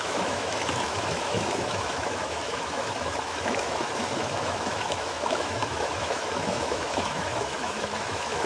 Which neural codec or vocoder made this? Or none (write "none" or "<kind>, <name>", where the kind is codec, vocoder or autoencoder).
autoencoder, DAC-VAE